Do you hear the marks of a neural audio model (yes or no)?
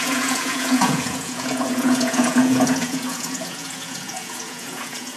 yes